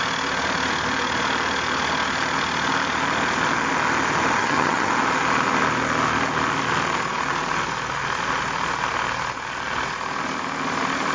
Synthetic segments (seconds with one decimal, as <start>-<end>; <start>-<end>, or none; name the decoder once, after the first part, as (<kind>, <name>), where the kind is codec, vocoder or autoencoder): 4.4-4.9 (vocoder, HiFi-GAN)